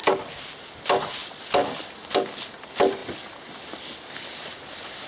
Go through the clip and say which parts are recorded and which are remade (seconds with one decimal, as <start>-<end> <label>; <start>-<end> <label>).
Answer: 0.0-5.1 recorded